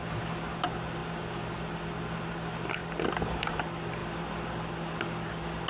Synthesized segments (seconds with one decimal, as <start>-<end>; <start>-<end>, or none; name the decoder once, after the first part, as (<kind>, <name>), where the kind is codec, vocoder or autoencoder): none

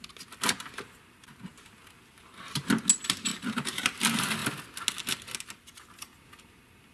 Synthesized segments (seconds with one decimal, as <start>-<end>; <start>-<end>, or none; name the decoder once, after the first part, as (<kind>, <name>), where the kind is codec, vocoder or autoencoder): 1.5-2.7 (vocoder, BigVGAN v2); 3.3-4.0